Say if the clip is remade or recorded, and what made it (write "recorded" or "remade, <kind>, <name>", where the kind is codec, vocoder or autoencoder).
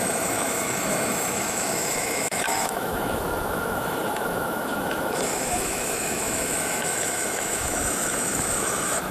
remade, autoencoder, DAC-VAE